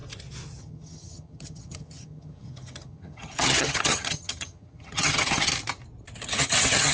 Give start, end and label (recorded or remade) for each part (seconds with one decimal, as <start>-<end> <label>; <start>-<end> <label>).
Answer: 0.0-0.6 recorded; 0.6-5.5 remade; 5.5-6.2 recorded; 6.2-6.9 remade